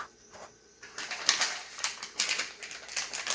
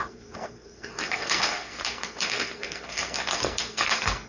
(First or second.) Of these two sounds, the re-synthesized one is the second